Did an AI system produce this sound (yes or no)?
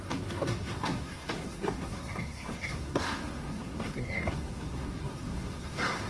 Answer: yes